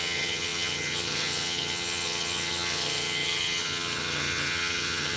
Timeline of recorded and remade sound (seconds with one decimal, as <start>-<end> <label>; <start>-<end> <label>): 0.0-5.2 remade